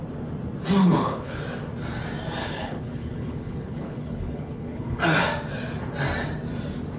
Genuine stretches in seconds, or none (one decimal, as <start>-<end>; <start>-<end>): 0.0-0.8; 1.4-2.4; 5.0-7.0